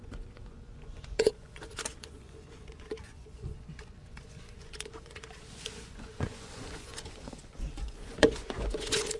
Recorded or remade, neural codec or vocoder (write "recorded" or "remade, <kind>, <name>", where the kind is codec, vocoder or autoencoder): remade, vocoder, Vocos